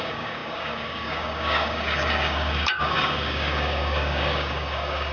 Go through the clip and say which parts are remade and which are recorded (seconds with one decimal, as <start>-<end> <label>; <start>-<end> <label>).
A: 0.0-5.1 remade